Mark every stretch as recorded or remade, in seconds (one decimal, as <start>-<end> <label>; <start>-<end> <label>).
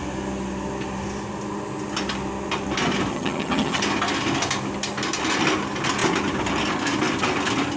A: 0.0-3.1 recorded; 3.1-3.8 remade; 3.8-7.8 recorded